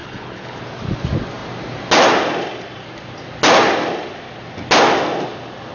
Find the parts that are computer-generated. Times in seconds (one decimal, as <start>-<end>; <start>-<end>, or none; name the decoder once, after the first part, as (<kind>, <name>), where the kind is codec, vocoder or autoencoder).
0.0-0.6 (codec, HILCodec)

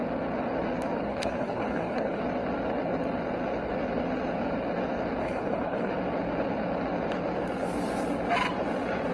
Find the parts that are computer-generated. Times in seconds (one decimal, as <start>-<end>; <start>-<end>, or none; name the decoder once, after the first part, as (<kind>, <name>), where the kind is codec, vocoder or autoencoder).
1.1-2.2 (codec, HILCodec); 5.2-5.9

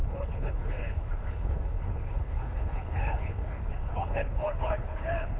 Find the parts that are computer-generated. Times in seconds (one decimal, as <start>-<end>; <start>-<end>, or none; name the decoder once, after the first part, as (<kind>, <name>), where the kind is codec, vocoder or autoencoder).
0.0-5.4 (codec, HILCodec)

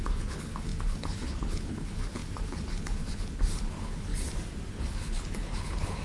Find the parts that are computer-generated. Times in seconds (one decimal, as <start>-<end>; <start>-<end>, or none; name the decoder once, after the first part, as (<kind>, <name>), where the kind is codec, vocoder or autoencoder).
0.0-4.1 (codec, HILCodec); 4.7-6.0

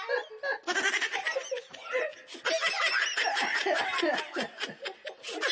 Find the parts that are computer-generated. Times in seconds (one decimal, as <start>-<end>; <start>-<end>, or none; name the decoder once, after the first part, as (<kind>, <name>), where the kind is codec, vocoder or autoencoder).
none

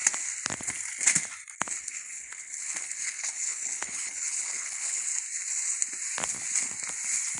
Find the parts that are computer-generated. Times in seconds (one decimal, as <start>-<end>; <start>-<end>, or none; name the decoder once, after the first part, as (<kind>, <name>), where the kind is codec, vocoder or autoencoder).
1.8-5.1 (codec, HILCodec)